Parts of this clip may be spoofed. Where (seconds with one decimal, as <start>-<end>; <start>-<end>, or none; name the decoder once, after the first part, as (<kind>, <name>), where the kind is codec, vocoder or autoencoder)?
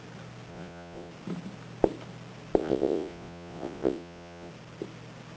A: 0.5-1.1 (vocoder, Vocos); 2.6-4.5